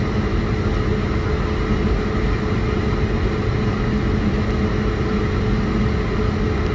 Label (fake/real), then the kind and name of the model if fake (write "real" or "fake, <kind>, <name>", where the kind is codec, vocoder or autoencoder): real